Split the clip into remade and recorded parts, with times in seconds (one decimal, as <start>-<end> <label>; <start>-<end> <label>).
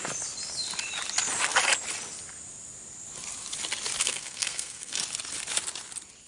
0.0-4.0 recorded; 4.0-5.0 remade; 5.0-6.3 recorded